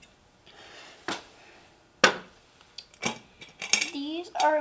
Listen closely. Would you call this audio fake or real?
real